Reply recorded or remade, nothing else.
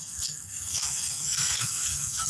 remade